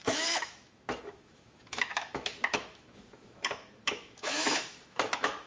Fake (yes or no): yes